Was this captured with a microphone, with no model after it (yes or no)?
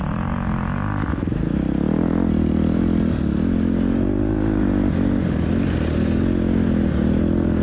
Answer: yes